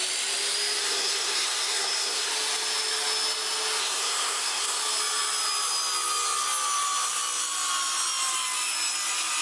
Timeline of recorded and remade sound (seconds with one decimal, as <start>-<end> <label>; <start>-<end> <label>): 0.0-0.8 recorded; 0.8-2.3 remade; 2.3-3.8 recorded; 3.8-4.8 remade; 4.8-9.4 recorded